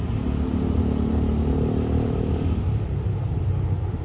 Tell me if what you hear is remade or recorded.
recorded